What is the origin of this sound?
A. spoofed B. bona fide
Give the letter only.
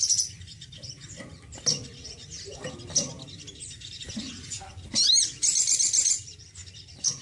B